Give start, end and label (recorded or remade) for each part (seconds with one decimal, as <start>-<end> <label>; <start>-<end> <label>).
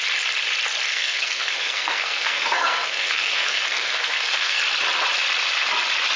0.0-0.9 recorded; 0.9-4.6 remade; 4.6-6.2 recorded